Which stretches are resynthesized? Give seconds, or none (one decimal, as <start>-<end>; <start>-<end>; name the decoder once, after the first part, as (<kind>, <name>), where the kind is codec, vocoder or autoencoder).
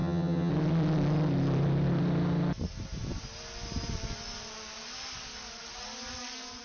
0.0-0.5 (vocoder, HiFi-GAN)